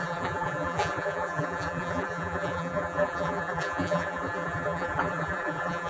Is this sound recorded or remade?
remade